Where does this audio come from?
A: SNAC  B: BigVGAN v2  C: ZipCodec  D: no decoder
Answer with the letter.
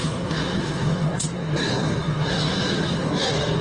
A